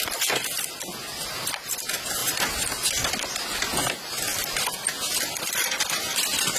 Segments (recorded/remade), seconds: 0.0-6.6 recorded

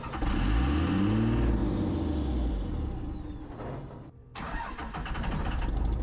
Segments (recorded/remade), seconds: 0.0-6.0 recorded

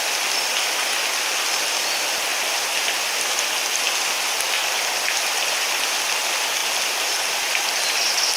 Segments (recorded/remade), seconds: 0.0-8.4 recorded